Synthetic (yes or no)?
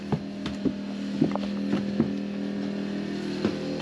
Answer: no